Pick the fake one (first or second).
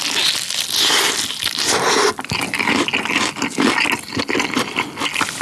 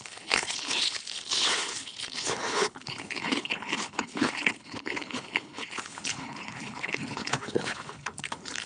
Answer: second